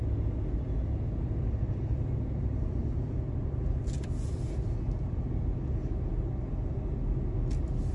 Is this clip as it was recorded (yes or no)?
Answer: yes